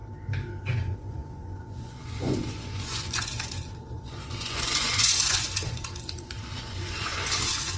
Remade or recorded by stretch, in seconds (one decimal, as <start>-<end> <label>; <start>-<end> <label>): 0.0-0.6 recorded; 0.6-7.8 remade

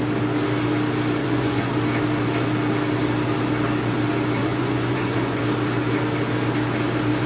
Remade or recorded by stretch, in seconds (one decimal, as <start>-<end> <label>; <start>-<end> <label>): 0.0-1.2 recorded; 1.2-1.7 remade; 1.7-4.4 recorded; 4.4-5.4 remade; 5.4-7.3 recorded

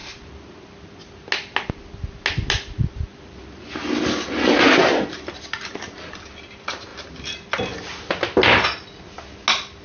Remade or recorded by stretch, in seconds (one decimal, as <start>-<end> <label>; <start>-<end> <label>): 0.0-9.8 recorded